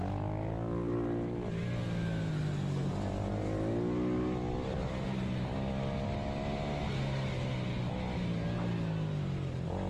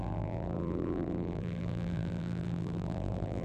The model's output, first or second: second